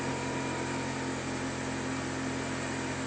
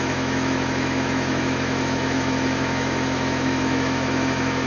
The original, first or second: first